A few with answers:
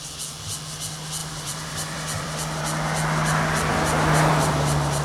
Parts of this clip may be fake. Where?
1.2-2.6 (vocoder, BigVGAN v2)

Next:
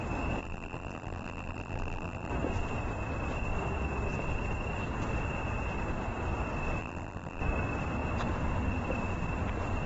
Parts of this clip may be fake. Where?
0.4-2.3 (vocoder, BigVGAN v2); 6.8-7.4

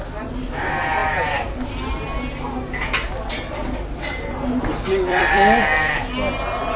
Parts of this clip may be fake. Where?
5.1-6.0 (vocoder, BigVGAN v2)

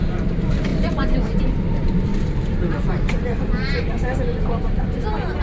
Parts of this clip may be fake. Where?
0.0-2.1 (vocoder, BigVGAN v2)